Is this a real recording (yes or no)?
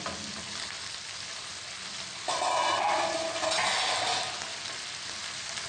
yes